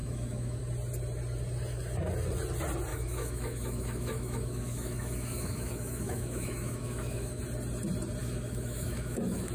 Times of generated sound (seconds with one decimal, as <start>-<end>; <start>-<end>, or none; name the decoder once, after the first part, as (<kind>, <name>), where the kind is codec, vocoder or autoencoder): 0.0-0.6 (autoencoder, DAC-VAE); 2.9-7.4; 8.2-9.5

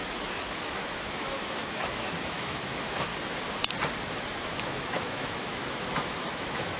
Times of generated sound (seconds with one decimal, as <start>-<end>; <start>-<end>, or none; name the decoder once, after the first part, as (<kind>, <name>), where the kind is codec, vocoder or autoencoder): 0.0-3.1 (autoencoder, DAC-VAE); 4.0-6.8

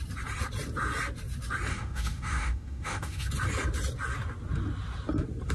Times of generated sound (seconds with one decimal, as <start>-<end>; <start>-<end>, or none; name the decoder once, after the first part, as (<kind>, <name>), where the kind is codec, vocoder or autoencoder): 1.7-3.3 (autoencoder, DAC-VAE)

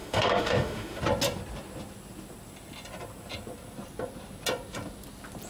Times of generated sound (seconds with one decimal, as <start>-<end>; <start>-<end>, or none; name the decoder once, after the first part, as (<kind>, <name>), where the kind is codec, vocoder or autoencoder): 0.0-1.0 (autoencoder, DAC-VAE)

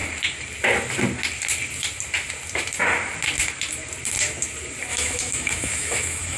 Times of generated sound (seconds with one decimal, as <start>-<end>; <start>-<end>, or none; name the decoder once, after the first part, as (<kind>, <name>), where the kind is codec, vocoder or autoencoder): 4.9-6.4 (autoencoder, DAC-VAE)